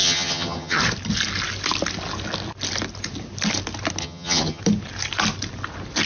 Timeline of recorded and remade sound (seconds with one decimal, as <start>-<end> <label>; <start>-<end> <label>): 0.0-0.8 remade; 0.8-4.0 recorded; 4.0-4.6 remade; 4.6-6.1 recorded